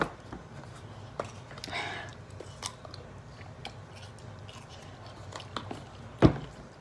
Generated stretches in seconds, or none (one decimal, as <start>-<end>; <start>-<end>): none